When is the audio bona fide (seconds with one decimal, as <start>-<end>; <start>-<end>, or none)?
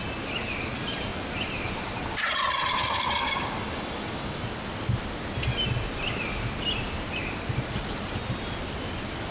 0.0-2.7; 4.4-9.3